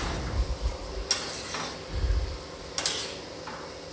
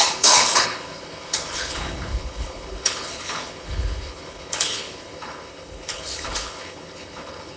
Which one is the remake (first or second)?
second